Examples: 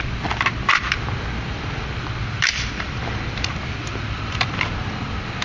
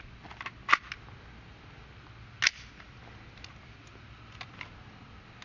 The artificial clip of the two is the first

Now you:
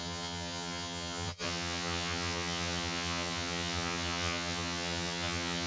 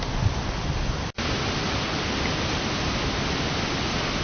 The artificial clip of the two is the first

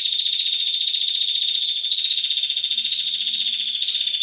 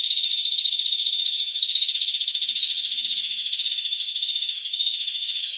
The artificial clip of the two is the second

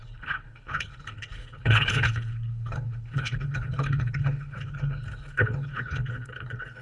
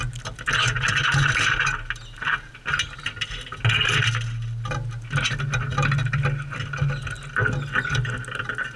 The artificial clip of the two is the first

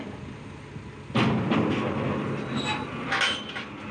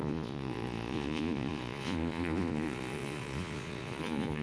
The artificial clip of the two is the second